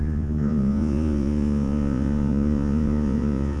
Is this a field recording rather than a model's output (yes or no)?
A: no